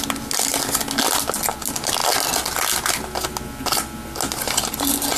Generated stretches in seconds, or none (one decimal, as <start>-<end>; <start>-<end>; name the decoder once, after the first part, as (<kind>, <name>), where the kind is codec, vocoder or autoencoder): none